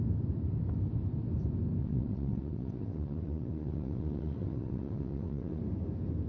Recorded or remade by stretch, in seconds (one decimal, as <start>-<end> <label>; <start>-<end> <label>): 0.0-1.8 recorded; 1.8-5.6 remade; 5.6-6.3 recorded